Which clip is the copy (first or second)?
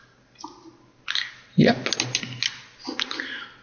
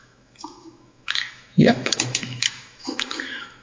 second